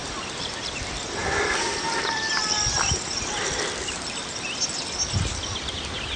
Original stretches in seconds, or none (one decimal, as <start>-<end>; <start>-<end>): 0.6-6.2